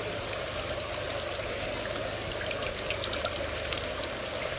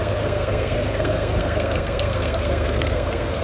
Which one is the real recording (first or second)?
first